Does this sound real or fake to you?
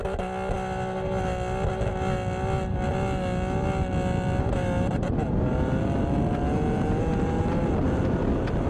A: real